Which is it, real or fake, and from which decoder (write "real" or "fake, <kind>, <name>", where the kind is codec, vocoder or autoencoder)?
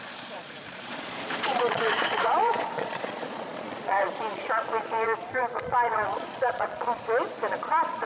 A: fake, vocoder, Vocos